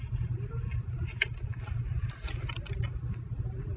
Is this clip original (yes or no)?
yes